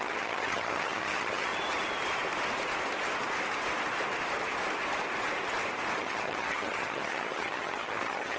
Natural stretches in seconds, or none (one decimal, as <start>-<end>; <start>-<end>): 1.5-6.0